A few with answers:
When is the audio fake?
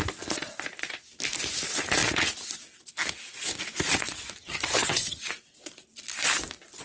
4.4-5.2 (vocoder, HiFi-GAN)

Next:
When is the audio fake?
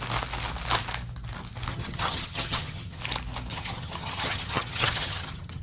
1.7-3.0 (vocoder, HiFi-GAN); 3.5-5.6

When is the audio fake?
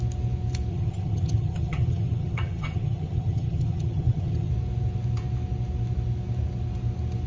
0.7-4.5 (vocoder, HiFi-GAN)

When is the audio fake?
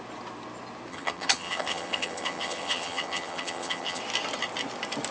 0.9-4.0 (vocoder, HiFi-GAN)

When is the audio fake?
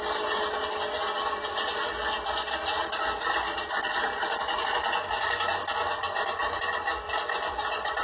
none